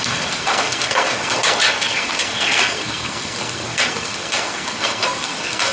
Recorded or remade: remade